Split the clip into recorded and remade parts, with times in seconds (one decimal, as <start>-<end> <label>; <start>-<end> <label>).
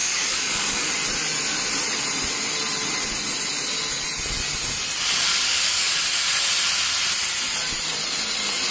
0.0-0.9 remade; 0.9-5.3 recorded; 5.3-5.9 remade; 5.9-8.7 recorded